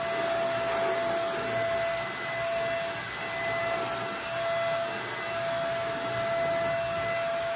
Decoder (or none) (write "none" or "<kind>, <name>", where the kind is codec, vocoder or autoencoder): none